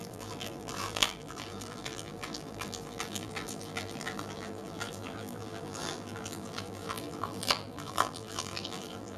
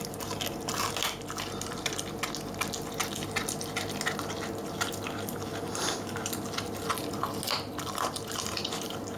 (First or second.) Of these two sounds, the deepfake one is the first